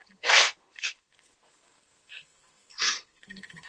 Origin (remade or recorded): remade